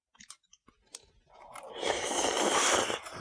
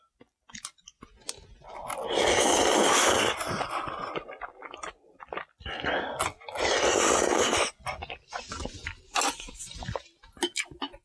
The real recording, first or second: second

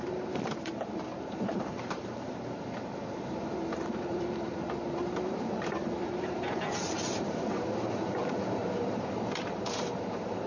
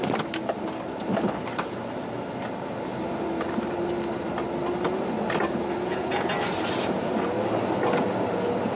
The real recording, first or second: second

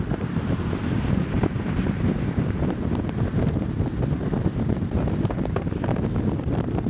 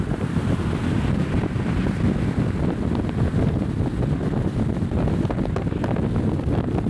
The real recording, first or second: second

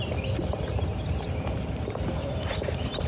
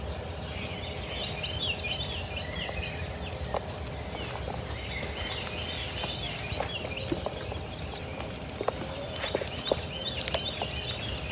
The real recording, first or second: second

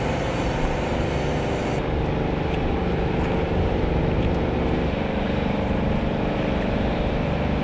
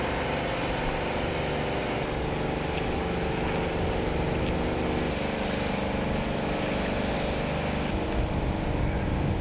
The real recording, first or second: second